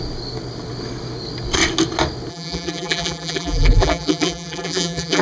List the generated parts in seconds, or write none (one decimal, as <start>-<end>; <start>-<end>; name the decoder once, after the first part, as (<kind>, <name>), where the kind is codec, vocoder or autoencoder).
2.3-5.2 (vocoder, BigVGAN v2)

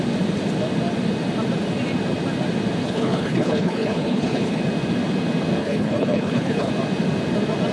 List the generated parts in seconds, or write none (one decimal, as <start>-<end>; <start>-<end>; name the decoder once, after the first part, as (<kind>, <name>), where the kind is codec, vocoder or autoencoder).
2.8-4.6 (codec, HILCodec); 5.6-6.7

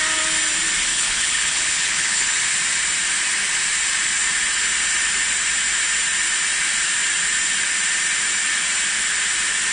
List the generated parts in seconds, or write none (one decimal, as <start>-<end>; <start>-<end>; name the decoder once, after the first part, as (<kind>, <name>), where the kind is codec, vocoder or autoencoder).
0.9-2.3 (codec, HILCodec)

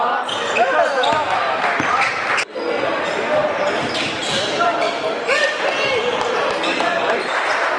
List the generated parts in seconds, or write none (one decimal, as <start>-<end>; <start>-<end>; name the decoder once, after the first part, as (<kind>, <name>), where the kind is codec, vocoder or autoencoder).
0.9-1.6 (vocoder, BigVGAN v2); 3.4-4.2; 5.4-7.8

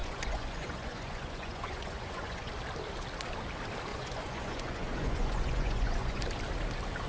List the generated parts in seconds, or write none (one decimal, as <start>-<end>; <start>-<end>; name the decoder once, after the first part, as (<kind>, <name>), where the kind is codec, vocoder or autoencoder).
0.0-2.5 (vocoder, Vocos); 3.9-6.2